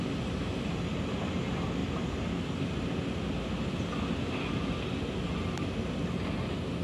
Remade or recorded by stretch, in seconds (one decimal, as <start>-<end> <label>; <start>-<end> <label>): 0.0-6.8 recorded